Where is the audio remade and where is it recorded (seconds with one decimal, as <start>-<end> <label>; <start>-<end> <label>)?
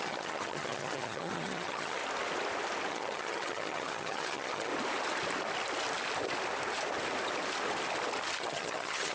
0.0-2.0 remade; 2.0-2.9 recorded; 2.9-4.7 remade; 4.7-8.4 recorded; 8.4-9.1 remade